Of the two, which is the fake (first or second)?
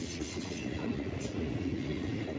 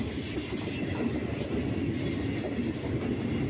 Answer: first